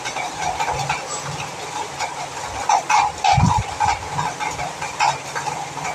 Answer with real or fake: real